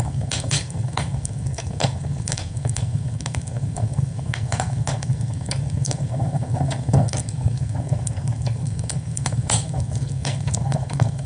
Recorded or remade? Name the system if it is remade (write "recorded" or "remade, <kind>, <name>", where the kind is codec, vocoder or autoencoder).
remade, codec, SNAC